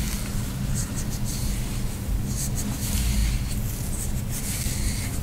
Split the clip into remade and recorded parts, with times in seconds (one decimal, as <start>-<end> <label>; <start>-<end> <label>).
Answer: 0.0-5.2 recorded